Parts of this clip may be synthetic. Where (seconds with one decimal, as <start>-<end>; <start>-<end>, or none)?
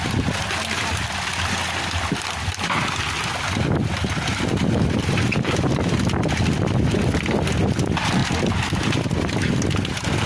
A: none